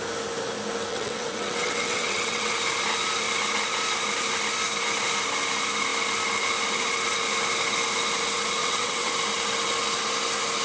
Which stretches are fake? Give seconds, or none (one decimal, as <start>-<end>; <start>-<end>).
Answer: 0.9-2.5; 8.6-9.1

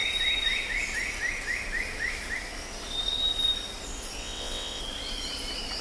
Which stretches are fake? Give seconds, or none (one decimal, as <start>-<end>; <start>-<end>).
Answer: 4.2-4.8

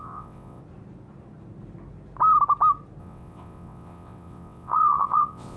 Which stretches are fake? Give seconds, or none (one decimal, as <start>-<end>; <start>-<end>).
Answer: 0.0-0.6; 3.0-5.6

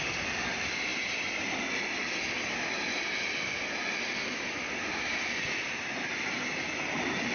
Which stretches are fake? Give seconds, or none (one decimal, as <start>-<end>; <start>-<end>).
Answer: none

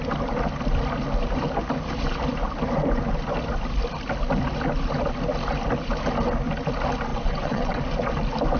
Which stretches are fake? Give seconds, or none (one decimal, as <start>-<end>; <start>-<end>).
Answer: 7.1-7.8

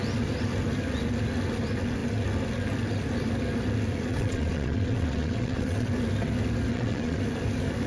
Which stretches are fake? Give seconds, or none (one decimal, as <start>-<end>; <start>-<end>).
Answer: 4.1-5.9; 6.7-7.2

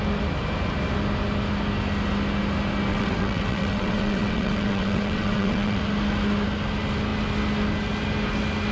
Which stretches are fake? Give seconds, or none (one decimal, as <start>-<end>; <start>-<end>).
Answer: 2.9-5.8

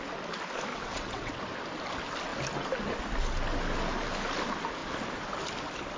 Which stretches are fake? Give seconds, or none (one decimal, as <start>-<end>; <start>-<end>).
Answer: 0.7-1.3